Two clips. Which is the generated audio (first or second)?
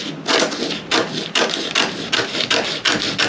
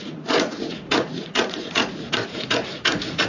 second